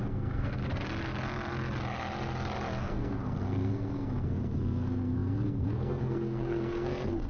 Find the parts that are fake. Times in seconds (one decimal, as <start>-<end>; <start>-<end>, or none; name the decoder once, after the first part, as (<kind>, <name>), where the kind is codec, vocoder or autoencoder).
0.0-0.6 (codec, SNAC); 2.8-7.3